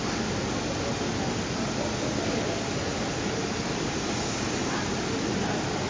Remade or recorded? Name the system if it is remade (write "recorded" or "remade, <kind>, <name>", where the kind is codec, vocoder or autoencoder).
recorded